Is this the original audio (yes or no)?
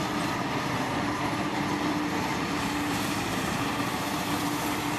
no